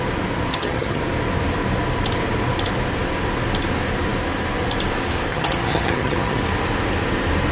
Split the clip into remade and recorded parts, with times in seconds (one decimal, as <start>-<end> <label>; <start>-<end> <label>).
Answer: 0.0-0.5 recorded; 0.5-1.0 remade; 1.0-5.3 recorded; 5.3-6.4 remade; 6.4-7.5 recorded